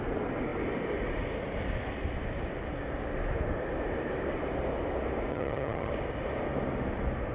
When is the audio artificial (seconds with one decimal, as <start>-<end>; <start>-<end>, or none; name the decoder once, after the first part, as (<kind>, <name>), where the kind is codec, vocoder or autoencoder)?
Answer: 5.3-5.9 (vocoder, HiFi-GAN)